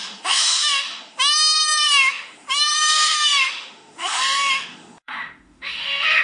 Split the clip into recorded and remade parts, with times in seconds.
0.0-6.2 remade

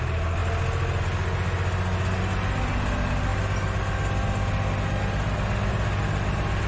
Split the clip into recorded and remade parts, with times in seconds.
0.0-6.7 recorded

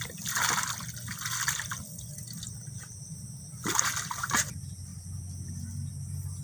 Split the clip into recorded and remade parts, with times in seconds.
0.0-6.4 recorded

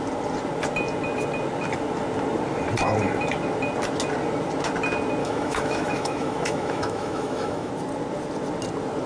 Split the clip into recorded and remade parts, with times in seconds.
0.0-5.2 recorded; 5.2-7.7 remade; 7.7-9.1 recorded